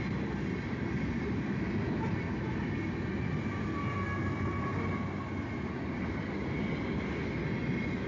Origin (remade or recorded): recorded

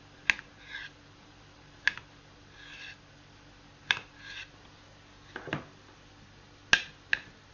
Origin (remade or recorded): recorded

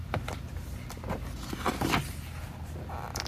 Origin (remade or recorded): recorded